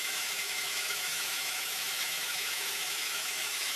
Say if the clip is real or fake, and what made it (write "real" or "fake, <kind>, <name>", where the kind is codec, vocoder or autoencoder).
fake, autoencoder, DAC-VAE